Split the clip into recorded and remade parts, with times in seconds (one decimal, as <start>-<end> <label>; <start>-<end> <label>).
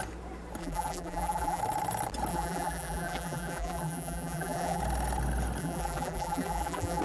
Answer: 0.0-0.6 recorded; 0.6-1.6 remade; 1.6-2.3 recorded; 2.3-4.8 remade; 4.8-5.6 recorded; 5.6-7.0 remade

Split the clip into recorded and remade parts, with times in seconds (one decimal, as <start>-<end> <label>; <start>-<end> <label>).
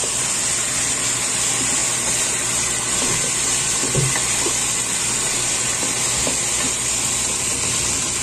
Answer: 0.0-8.2 recorded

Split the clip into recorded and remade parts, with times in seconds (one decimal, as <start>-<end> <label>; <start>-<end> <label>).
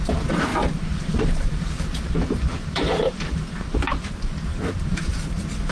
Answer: 0.0-0.5 recorded; 0.5-3.9 remade; 3.9-4.5 recorded; 4.5-5.1 remade; 5.1-5.7 recorded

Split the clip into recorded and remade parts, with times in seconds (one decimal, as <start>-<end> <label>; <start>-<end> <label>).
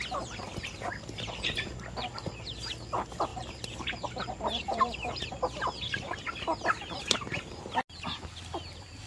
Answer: 0.0-3.3 recorded; 3.3-5.3 remade; 5.3-9.1 recorded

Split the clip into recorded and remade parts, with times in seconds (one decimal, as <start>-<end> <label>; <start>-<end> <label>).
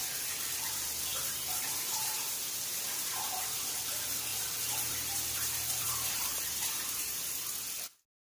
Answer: 0.0-1.1 recorded; 1.1-2.4 remade; 2.4-3.0 recorded; 3.0-3.6 remade; 3.6-4.3 recorded; 4.3-7.3 remade; 7.3-8.4 recorded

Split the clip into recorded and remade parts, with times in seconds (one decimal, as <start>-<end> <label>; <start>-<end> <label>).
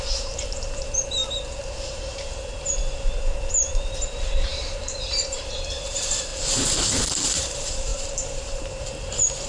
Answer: 0.0-6.3 remade; 6.3-7.1 recorded; 7.1-9.5 remade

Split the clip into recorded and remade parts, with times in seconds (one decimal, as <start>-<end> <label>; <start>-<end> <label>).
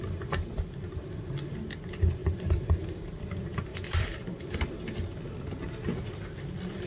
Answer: 0.0-2.2 recorded; 2.2-3.1 remade; 3.1-3.7 recorded; 3.7-4.5 remade; 4.5-6.9 recorded